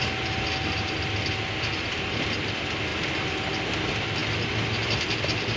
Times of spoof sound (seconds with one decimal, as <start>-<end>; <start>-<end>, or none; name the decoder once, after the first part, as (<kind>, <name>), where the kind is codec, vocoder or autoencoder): none